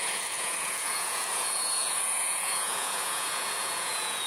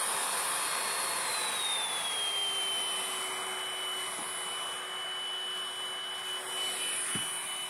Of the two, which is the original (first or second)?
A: second